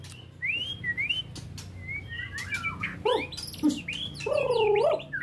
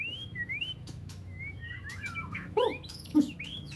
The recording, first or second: first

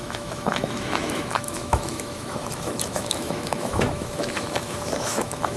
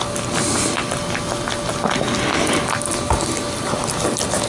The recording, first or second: second